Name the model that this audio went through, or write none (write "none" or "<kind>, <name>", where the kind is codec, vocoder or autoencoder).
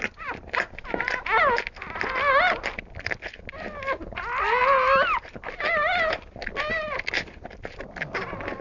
none